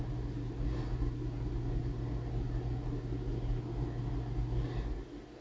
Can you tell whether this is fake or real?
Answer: real